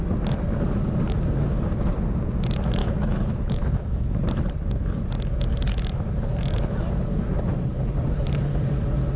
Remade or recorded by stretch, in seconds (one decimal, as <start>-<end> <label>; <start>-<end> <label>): 0.0-2.8 recorded; 2.8-4.2 remade; 4.2-9.2 recorded